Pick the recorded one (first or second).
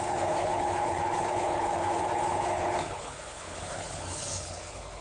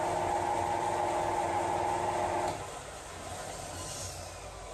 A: second